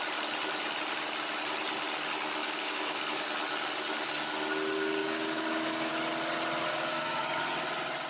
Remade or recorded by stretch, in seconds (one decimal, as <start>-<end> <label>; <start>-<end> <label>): 0.0-2.4 recorded; 2.4-3.2 remade; 3.2-5.0 recorded; 5.0-5.9 remade; 5.9-6.7 recorded; 6.7-7.4 remade; 7.4-8.1 recorded